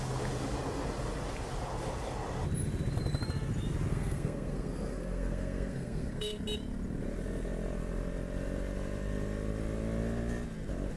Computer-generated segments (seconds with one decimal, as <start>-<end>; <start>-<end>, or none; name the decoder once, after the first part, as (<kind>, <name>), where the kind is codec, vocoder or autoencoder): 3.9-6.4 (codec, SNAC)